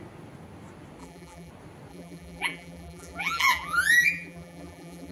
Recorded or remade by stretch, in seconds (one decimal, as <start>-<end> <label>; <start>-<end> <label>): 0.0-1.0 recorded; 1.0-1.5 remade; 1.5-1.9 recorded; 1.9-5.1 remade